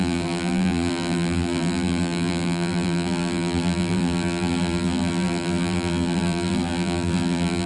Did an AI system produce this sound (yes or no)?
yes